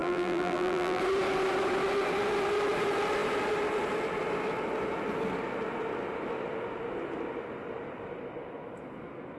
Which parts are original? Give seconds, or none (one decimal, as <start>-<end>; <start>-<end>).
1.0-9.4